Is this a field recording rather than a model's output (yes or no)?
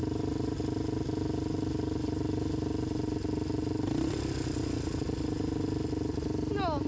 yes